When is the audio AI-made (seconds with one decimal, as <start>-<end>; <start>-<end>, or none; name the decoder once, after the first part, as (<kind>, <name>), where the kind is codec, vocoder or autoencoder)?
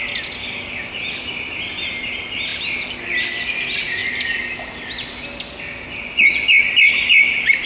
0.4-0.9 (codec, DAC)